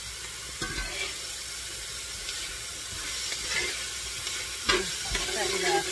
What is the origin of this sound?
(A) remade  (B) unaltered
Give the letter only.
B